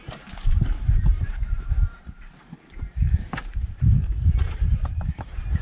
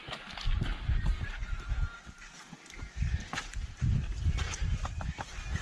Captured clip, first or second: second